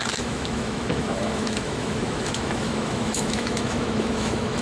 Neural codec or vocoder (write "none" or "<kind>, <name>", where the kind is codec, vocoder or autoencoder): autoencoder, DAC-VAE